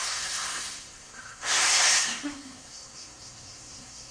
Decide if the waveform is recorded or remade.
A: remade